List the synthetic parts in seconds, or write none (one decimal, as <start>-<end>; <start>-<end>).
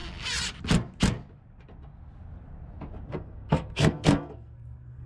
3.1-5.1